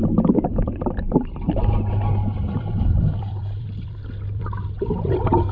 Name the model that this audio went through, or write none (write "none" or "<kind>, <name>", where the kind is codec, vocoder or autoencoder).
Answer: vocoder, BigVGAN v2